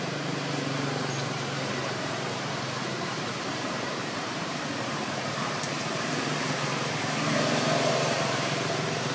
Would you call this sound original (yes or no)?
no